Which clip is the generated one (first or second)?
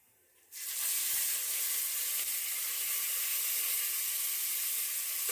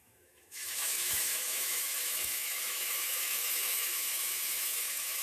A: second